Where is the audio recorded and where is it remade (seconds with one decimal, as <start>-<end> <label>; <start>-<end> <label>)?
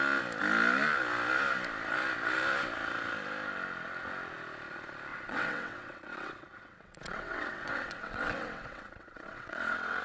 0.0-5.1 recorded; 5.1-10.0 remade